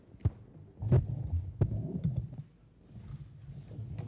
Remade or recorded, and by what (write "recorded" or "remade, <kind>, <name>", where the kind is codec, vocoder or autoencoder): recorded